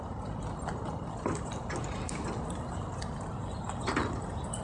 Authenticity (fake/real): real